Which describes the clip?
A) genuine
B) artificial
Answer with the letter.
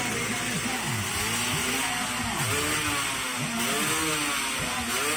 A